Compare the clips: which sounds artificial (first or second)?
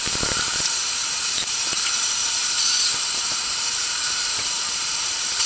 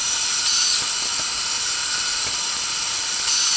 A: first